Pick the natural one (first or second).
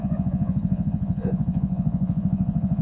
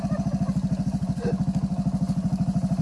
second